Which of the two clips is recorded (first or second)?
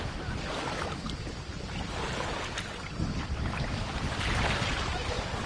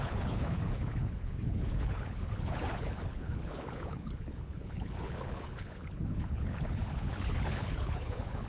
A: first